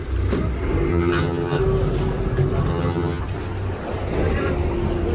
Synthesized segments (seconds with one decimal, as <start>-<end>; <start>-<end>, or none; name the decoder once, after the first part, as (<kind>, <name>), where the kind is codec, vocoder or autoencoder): 0.9-1.6 (vocoder, HiFi-GAN); 2.7-3.2